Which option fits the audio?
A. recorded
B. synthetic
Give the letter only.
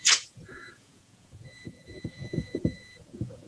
B